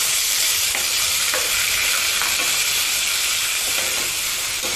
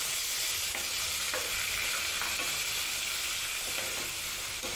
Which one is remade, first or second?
first